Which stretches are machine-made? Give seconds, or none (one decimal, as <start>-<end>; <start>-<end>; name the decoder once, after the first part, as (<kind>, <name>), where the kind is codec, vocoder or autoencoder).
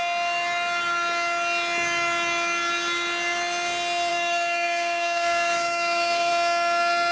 4.1-6.3 (codec, DAC)